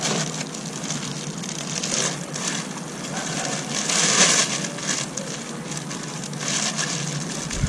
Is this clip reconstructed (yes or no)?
no